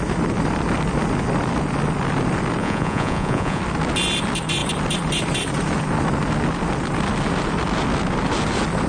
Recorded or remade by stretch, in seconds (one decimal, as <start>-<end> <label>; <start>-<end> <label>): 0.0-2.6 recorded; 2.6-3.6 remade; 3.6-8.9 recorded